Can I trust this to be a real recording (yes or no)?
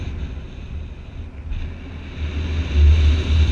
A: yes